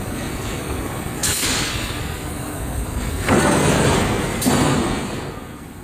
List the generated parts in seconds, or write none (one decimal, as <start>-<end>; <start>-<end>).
0.0-5.8

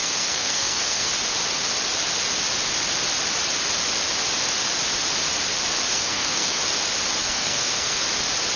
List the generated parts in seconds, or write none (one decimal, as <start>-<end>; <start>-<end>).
0.0-1.1; 5.9-6.6; 7.2-8.0

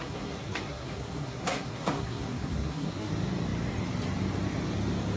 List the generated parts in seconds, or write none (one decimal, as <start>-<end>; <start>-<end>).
0.0-3.1

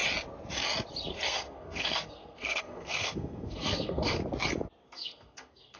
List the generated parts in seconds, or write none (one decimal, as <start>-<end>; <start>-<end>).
1.1-4.2; 4.8-5.8

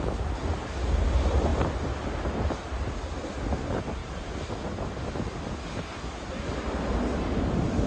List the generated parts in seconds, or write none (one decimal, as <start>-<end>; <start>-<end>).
none

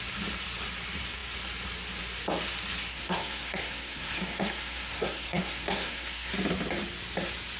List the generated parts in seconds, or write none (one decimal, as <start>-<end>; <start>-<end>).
2.9-6.3